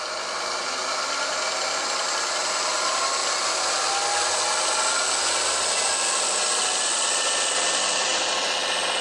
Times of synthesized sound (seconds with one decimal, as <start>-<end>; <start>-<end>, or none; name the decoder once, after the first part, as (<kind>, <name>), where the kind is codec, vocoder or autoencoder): none